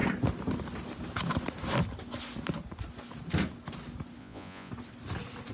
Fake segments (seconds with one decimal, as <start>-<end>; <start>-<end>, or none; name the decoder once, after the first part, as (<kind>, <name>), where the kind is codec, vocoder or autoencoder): 4.2-4.7 (vocoder, Vocos)